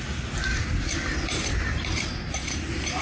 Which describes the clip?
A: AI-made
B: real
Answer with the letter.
B